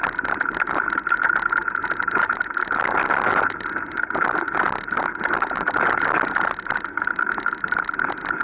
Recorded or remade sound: recorded